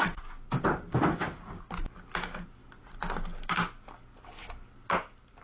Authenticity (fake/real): real